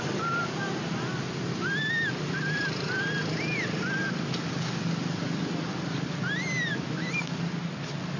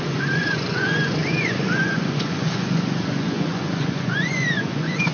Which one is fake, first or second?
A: second